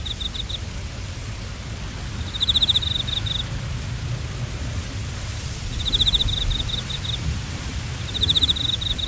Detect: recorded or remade recorded